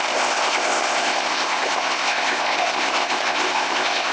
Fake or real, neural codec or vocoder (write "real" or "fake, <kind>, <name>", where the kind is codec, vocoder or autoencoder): fake, codec, ZipCodec